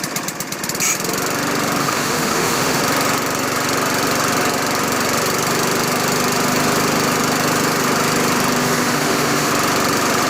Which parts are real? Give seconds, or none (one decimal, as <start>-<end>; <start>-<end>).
0.0-1.8; 2.8-8.6; 9.5-10.3